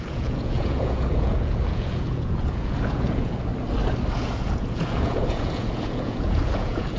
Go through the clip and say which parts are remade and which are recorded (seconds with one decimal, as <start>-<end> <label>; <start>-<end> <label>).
0.0-3.5 remade; 3.5-4.1 recorded; 4.1-7.0 remade